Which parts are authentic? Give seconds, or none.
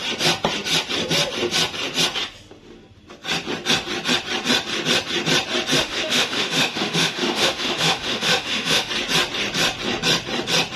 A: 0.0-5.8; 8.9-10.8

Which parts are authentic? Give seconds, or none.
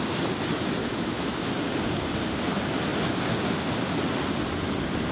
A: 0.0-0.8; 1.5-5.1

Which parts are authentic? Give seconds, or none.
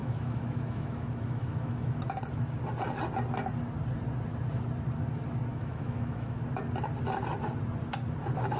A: 2.0-5.5; 6.4-8.6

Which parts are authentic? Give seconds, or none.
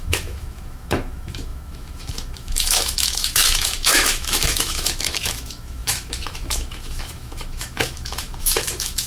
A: none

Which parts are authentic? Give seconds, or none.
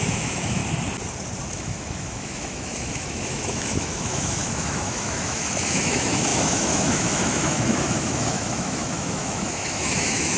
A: 0.6-1.5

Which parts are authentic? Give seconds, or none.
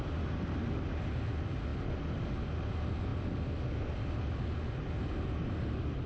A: 0.0-6.1